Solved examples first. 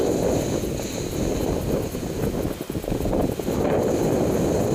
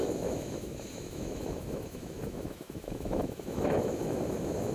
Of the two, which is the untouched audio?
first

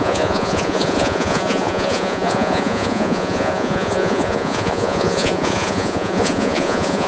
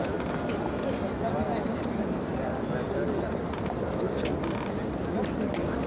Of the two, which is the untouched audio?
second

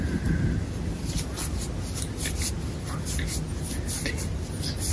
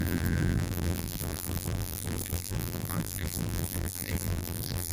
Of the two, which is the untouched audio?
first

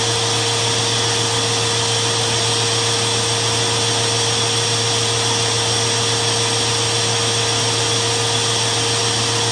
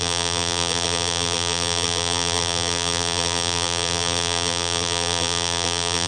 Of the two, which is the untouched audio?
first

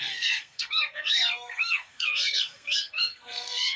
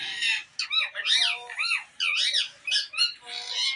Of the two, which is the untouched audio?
second